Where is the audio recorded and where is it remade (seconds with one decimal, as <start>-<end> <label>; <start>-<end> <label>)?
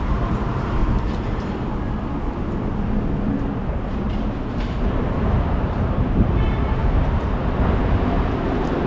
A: 0.0-0.8 remade; 0.8-4.5 recorded; 4.5-6.8 remade; 6.8-7.7 recorded; 7.7-8.9 remade